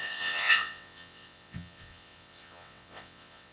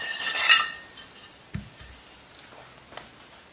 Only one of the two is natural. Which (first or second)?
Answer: second